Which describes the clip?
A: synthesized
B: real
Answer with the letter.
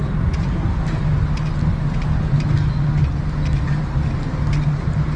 B